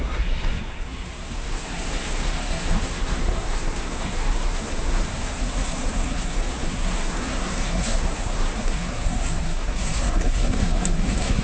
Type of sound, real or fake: fake